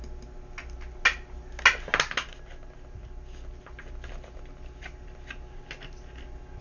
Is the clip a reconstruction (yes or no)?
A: no